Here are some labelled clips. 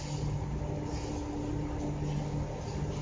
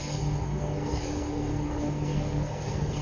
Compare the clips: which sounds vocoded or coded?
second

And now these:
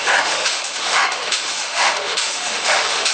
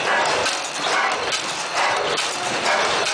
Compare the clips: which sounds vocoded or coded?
first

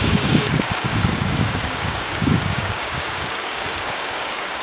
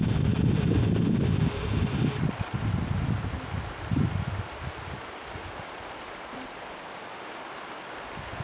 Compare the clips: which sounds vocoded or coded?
first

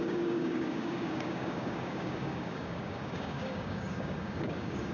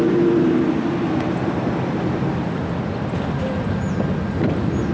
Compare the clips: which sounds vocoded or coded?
first